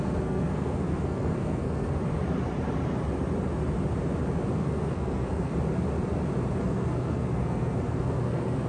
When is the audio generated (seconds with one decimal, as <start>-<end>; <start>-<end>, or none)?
0.0-2.0; 4.5-5.5; 6.6-8.7